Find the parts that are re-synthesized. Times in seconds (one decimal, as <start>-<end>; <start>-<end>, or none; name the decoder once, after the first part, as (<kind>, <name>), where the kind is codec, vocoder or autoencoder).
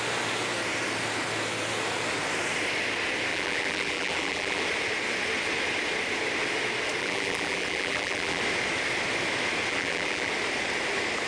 3.3-4.6 (vocoder, BigVGAN v2); 7.0-8.4; 9.7-10.3